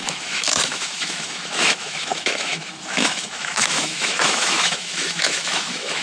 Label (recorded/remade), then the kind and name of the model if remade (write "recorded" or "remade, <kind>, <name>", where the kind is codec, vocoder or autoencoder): remade, autoencoder, DAC-VAE